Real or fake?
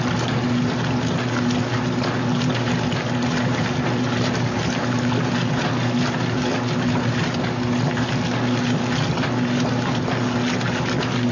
real